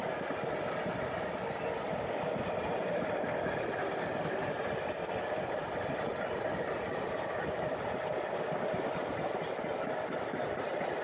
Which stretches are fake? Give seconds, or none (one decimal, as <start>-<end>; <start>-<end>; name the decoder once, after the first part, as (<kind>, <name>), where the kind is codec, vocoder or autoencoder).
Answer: 2.6-3.1 (vocoder, BigVGAN v2); 5.6-8.0